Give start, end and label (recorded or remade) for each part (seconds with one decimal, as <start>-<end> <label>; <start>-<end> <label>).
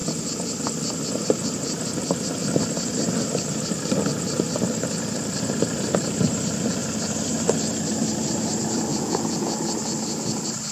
0.0-8.9 recorded; 8.9-9.6 remade; 9.6-10.7 recorded